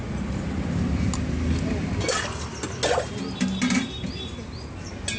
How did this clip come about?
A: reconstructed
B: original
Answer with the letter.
B